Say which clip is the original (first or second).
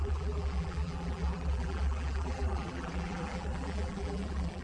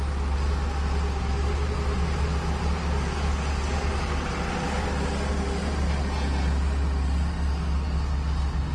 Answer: second